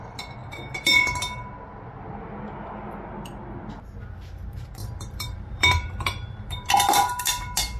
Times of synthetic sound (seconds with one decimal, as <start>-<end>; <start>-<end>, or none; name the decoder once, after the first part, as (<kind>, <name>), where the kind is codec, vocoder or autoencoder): 4.8-6.7 (vocoder, BigVGAN v2)